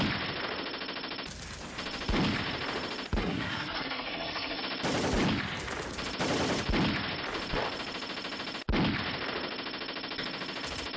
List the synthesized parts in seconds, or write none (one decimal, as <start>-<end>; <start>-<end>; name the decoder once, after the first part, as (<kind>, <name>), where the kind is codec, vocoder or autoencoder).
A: 3.2-4.6 (codec, SNAC)